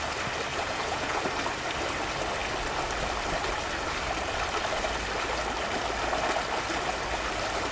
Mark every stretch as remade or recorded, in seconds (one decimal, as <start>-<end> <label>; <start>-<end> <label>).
0.0-0.5 recorded; 0.5-1.2 remade; 1.2-7.7 recorded